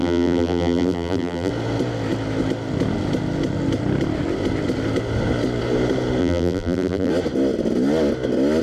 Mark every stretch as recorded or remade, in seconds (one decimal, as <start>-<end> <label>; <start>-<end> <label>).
0.0-1.5 remade; 1.5-6.2 recorded; 6.2-7.1 remade; 7.1-8.6 recorded